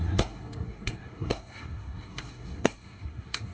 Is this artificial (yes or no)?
yes